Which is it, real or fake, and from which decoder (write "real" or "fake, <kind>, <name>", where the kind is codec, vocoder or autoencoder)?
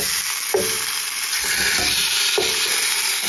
real